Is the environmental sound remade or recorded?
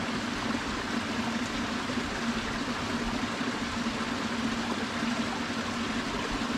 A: recorded